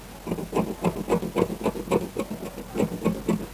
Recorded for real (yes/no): yes